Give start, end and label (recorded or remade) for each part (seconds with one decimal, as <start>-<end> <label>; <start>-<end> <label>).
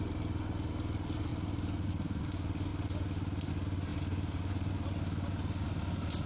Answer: 0.0-6.3 recorded